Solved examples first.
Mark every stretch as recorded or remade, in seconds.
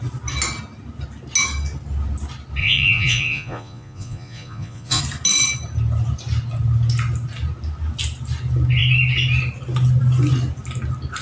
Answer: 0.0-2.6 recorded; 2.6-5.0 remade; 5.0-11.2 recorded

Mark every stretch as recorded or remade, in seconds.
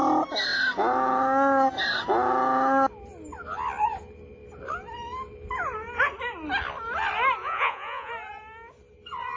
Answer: 0.0-7.4 recorded; 7.4-8.1 remade; 8.1-9.4 recorded